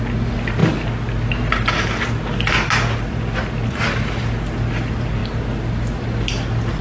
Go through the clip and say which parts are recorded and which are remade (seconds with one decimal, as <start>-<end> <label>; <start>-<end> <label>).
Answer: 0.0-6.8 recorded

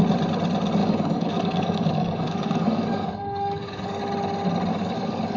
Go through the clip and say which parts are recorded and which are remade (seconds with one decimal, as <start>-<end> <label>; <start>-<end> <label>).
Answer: 0.0-0.8 recorded; 0.8-4.0 remade; 4.0-4.7 recorded; 4.7-5.4 remade

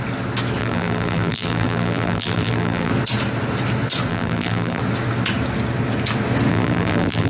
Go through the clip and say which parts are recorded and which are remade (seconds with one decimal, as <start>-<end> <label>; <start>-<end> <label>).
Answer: 0.0-0.6 recorded; 0.6-2.9 remade; 2.9-4.1 recorded; 4.1-4.8 remade; 4.8-6.5 recorded; 6.5-7.3 remade

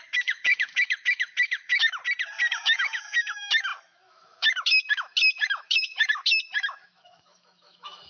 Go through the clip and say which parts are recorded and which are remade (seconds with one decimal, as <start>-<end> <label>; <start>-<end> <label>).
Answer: 0.0-2.0 remade; 2.0-2.5 recorded; 2.5-8.1 remade